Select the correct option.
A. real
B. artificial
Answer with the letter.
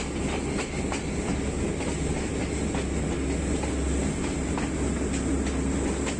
A